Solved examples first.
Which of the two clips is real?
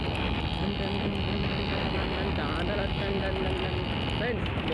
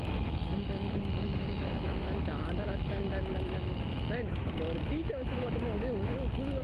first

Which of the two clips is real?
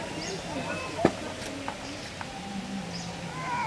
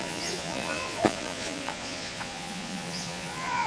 first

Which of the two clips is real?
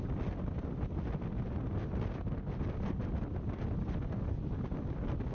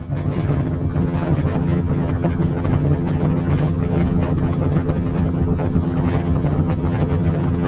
first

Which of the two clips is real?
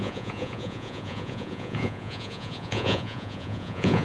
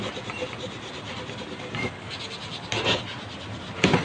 second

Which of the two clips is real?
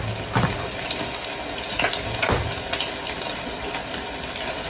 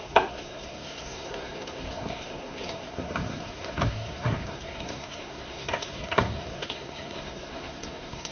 first